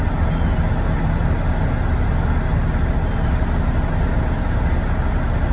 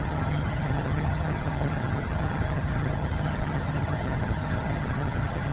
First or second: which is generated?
second